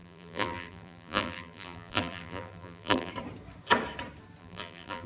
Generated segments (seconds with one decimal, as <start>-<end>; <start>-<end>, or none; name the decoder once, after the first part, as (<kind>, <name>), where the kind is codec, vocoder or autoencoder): 0.0-3.1 (vocoder, BigVGAN v2); 4.4-5.1